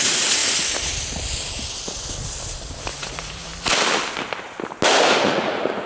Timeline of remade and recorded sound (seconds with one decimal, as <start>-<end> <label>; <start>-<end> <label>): 0.0-0.4 remade; 0.4-2.9 recorded; 2.9-3.5 remade; 3.5-5.2 recorded; 5.2-5.9 remade